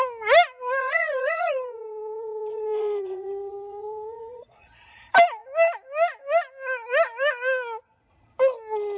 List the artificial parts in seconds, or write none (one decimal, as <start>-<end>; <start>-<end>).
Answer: 0.8-4.7